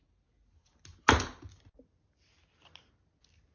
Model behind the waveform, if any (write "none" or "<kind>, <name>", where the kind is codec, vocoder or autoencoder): none